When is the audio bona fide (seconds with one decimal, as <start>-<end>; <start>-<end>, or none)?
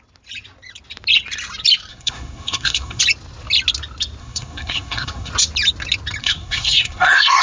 0.0-1.9; 3.0-4.2; 5.3-6.2